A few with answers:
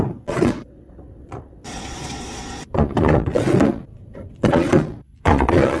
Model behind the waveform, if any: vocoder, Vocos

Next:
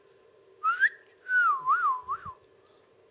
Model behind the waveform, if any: none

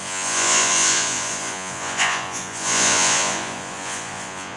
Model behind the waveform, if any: vocoder, Vocos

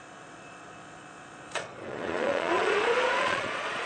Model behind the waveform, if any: vocoder, Vocos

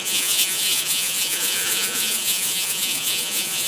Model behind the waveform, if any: vocoder, Vocos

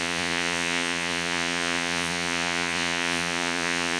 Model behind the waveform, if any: vocoder, Vocos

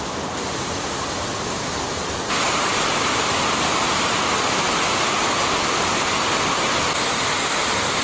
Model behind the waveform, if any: none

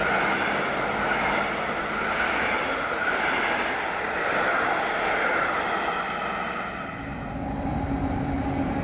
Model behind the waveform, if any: none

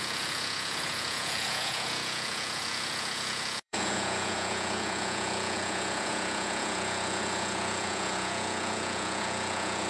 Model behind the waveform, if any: vocoder, Vocos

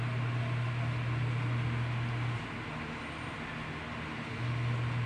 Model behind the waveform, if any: none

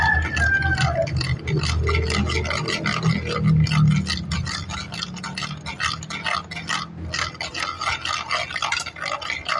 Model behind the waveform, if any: none